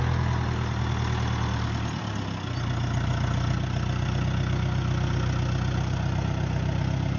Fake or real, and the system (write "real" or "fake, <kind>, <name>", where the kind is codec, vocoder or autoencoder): real